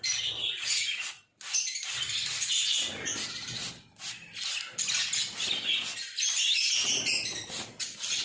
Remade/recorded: recorded